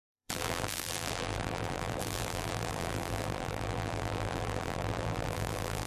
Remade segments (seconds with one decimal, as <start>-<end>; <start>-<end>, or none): 0.0-5.9